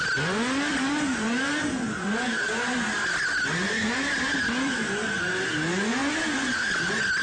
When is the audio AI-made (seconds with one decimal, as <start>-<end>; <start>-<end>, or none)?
none